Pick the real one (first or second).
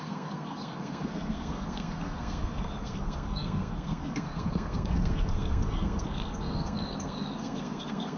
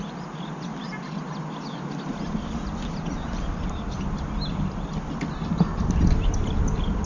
second